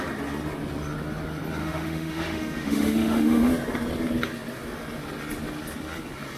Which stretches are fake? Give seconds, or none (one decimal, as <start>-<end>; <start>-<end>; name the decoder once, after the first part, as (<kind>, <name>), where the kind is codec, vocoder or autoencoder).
1.6-3.5 (autoencoder, DAC-VAE)